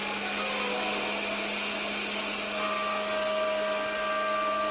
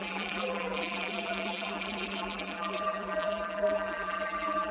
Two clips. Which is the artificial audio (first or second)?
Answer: second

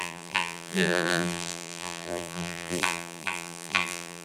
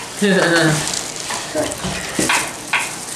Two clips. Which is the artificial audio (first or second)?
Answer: first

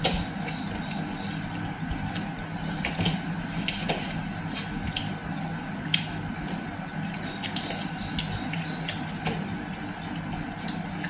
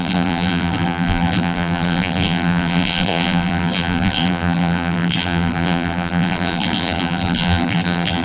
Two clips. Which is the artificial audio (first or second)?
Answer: second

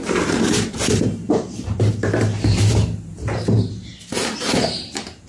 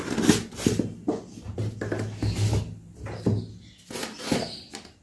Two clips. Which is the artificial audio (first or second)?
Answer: first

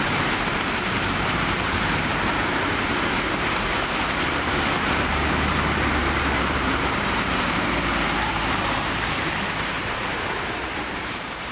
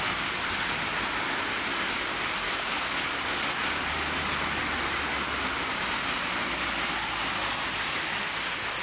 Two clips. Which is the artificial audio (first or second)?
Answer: first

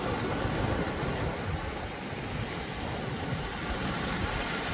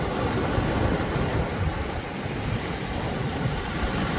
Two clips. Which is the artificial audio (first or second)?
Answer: second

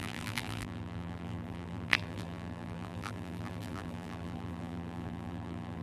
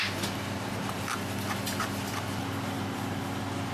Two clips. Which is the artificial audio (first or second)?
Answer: first